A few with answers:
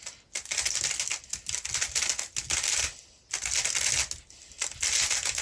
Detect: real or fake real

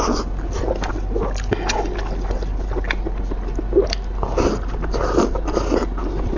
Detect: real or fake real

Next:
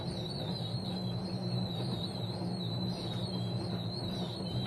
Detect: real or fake real